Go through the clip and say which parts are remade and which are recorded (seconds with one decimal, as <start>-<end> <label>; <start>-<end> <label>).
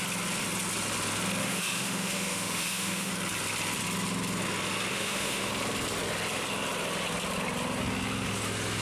0.0-1.4 recorded; 1.4-3.1 remade; 3.1-4.9 recorded; 4.9-5.5 remade; 5.5-8.8 recorded